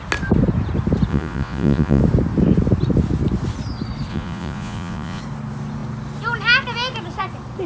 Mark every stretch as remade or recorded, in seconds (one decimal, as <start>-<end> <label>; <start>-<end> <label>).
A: 0.0-1.1 recorded; 1.1-2.0 remade; 2.0-4.1 recorded; 4.1-5.2 remade; 5.2-7.7 recorded

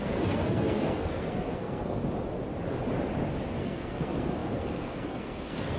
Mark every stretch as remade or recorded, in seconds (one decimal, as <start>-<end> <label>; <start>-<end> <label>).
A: 0.0-2.0 remade; 2.0-3.6 recorded; 3.6-5.8 remade

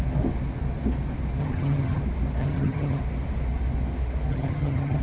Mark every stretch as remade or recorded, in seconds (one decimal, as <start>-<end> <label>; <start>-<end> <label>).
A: 0.0-1.4 recorded; 1.4-2.0 remade; 2.0-2.4 recorded; 2.4-3.0 remade; 3.0-4.3 recorded; 4.3-5.0 remade

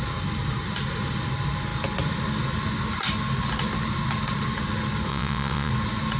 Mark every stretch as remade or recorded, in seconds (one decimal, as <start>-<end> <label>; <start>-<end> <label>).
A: 0.0-5.1 recorded; 5.1-5.7 remade; 5.7-6.2 recorded

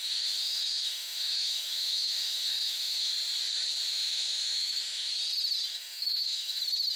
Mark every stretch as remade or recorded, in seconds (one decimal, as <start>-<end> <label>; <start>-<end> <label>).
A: 0.0-3.1 remade; 3.1-3.9 recorded; 3.9-5.1 remade; 5.1-5.7 recorded; 5.7-6.6 remade; 6.6-7.0 recorded

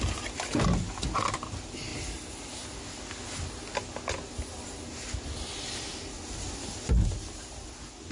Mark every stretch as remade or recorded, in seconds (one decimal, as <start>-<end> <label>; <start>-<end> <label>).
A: 0.0-8.1 recorded